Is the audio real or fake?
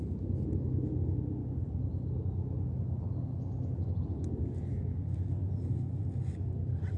real